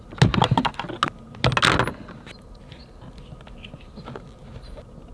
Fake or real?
real